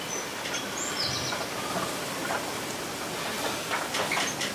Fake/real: real